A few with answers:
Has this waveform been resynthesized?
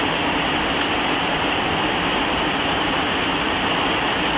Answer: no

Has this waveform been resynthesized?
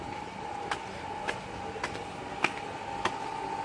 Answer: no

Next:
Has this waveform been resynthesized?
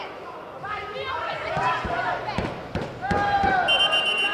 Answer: no